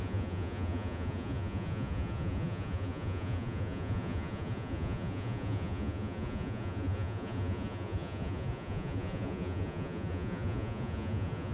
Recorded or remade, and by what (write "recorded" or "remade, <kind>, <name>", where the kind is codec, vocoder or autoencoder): remade, vocoder, Vocos